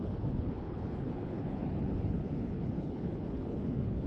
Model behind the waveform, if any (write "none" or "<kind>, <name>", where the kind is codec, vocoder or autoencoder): codec, HILCodec